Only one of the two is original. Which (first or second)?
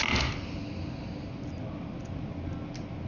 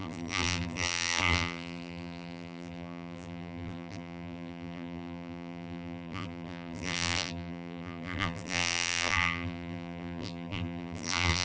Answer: first